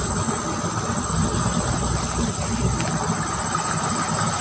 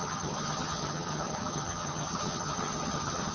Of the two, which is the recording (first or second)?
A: first